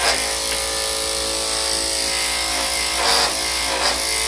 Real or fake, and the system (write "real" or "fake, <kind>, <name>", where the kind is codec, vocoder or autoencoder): real